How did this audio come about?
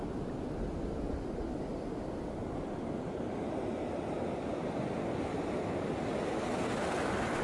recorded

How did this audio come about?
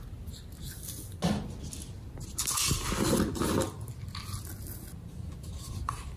recorded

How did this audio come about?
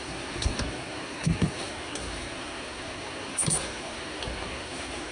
remade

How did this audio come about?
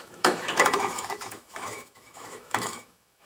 remade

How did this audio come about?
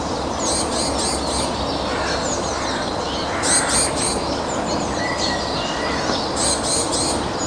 recorded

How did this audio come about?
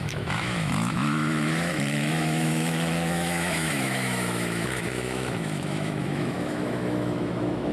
remade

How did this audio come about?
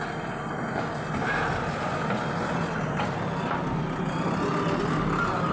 recorded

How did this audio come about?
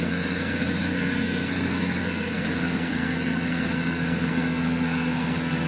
remade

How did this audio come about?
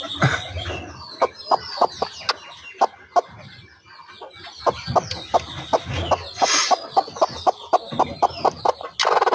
recorded